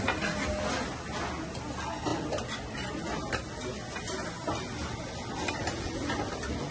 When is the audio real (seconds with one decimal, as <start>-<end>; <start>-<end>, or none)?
0.0-6.7